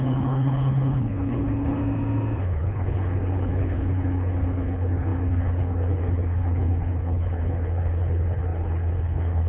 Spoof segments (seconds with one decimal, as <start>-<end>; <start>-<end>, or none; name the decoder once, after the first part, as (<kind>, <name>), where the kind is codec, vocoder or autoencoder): 0.0-1.8 (codec, HILCodec); 2.4-9.5